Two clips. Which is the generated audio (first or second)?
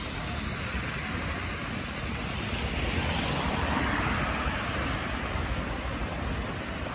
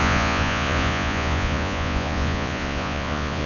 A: second